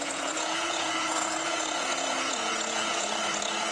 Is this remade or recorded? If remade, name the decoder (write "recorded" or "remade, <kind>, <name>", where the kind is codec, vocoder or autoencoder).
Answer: remade, vocoder, Vocos